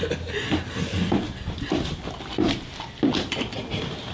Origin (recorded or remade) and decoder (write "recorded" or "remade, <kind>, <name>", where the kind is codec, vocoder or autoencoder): recorded